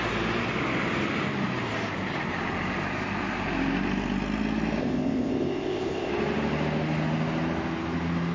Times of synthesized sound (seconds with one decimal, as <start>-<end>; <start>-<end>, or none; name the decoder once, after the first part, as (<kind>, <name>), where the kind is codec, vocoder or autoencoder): 4.8-6.1 (codec, ZipCodec)